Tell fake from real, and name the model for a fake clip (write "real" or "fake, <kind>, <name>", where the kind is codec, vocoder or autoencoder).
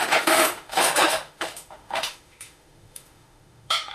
fake, autoencoder, DAC-VAE